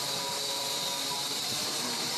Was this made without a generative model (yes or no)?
no